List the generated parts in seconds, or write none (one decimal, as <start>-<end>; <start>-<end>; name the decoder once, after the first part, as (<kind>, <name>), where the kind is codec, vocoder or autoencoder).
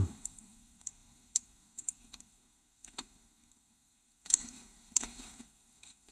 0.0-6.1 (codec, SNAC)